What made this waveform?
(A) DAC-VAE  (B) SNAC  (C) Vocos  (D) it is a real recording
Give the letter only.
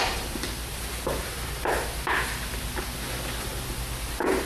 D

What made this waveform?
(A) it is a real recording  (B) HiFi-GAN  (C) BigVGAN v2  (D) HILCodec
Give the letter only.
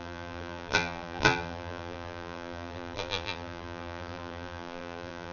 C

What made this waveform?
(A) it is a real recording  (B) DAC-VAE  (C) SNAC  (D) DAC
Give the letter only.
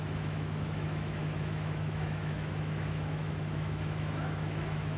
B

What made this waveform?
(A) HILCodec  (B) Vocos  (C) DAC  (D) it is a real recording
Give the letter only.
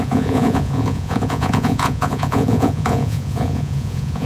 B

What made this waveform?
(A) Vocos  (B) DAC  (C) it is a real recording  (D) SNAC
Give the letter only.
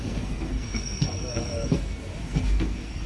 D